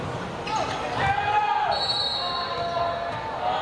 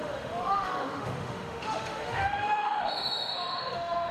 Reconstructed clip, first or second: second